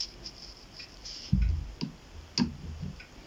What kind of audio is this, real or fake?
real